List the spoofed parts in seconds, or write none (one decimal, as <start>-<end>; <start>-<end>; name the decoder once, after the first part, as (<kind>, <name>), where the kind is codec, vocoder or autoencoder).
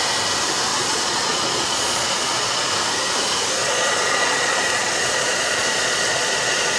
0.7-2.7 (vocoder, Vocos); 3.6-6.8